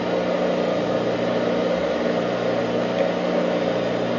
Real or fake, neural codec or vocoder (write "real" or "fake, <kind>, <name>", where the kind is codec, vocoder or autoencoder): real